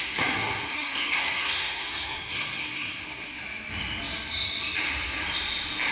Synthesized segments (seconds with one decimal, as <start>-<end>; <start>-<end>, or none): 0.0-3.4